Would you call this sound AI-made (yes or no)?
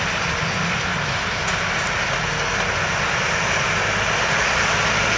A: no